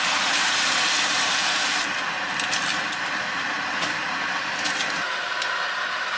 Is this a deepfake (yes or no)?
no